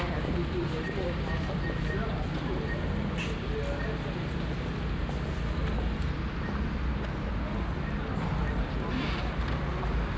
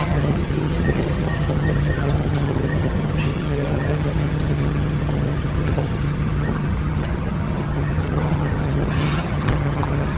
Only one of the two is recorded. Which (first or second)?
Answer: first